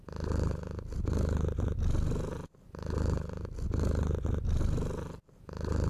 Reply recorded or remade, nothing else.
recorded